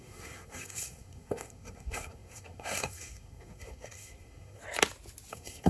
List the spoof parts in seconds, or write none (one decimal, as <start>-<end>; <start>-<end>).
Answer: 0.0-4.6; 5.3-5.7